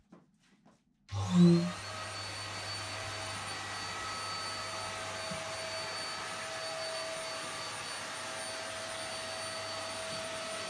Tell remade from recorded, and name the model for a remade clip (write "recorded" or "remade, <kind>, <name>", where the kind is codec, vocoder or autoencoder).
recorded